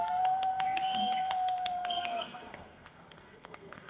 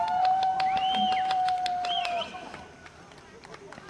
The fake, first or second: first